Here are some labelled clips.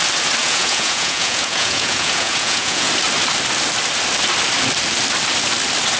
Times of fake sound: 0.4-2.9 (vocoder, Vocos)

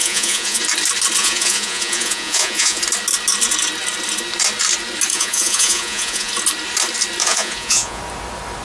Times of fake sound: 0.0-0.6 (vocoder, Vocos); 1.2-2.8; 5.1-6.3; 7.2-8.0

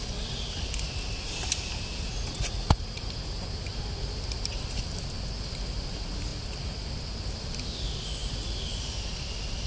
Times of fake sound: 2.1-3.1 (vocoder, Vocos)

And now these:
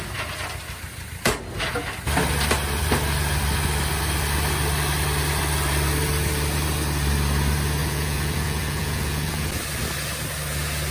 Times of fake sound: 7.8-9.5 (vocoder, Vocos)

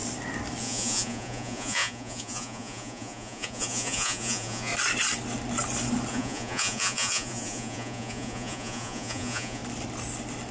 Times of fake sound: 0.6-4.7 (vocoder, Vocos); 6.1-9.6